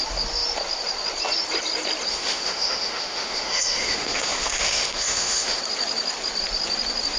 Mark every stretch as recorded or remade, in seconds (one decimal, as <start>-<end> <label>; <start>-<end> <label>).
0.0-2.1 recorded; 2.1-5.6 remade; 5.6-7.2 recorded